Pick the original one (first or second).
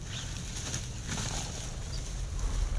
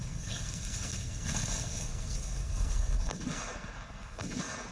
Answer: first